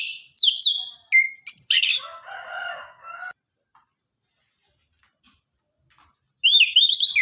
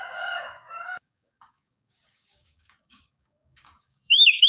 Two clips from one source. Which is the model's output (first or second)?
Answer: second